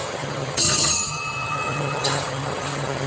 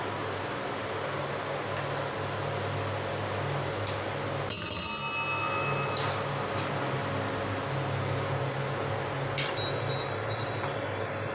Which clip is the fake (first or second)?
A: first